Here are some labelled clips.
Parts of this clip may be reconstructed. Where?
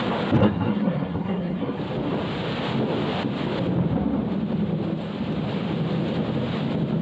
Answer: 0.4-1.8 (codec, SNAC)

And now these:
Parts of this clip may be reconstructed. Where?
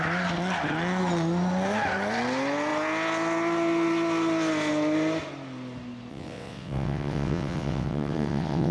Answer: 6.1-8.7 (vocoder, WaveNeXt)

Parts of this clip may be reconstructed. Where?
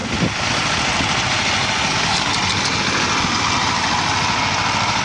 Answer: 1.9-2.3 (codec, DAC)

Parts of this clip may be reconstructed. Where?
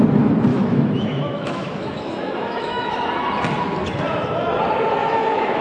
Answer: 0.5-3.0 (autoencoder, DAC-VAE); 5.0-5.6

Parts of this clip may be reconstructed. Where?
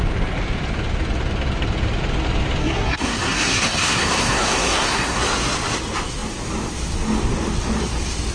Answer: 2.6-5.2 (codec, SNAC)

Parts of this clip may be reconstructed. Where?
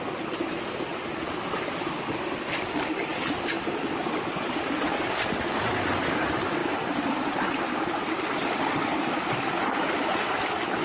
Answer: 0.0-0.9 (vocoder, BigVGAN v2); 2.7-3.1; 5.7-10.8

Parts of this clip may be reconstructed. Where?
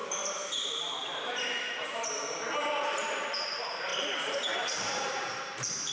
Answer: 0.0-5.9 (vocoder, BigVGAN v2)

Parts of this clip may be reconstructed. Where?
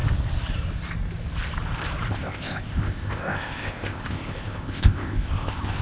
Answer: 2.1-5.8 (codec, ZipCodec)